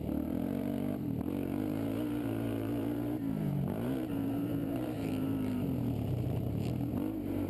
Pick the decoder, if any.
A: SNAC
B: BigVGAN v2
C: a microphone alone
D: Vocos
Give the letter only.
B